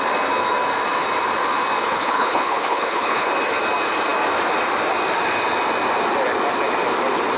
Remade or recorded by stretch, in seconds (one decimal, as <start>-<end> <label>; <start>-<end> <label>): 0.0-1.8 recorded; 1.8-3.3 remade; 3.3-7.4 recorded